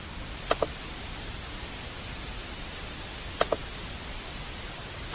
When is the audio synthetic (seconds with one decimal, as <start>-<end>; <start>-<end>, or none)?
none

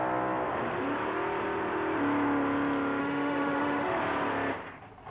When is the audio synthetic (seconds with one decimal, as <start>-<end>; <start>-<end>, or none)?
3.0-4.0